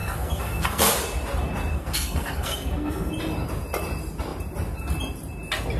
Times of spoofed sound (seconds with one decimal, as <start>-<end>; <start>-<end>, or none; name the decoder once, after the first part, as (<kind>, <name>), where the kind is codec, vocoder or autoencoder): 0.0-0.9 (codec, SNAC); 1.7-3.1